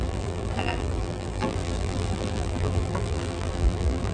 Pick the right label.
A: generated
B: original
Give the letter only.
A